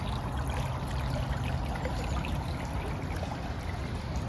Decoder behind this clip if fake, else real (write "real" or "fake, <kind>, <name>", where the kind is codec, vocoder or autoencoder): real